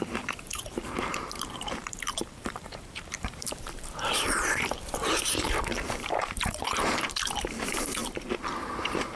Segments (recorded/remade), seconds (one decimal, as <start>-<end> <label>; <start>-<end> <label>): 0.0-8.0 remade; 8.0-8.6 recorded; 8.6-9.2 remade